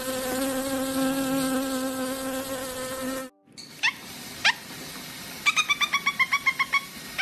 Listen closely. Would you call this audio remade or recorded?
recorded